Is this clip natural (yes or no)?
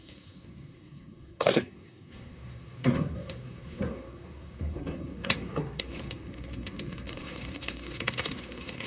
no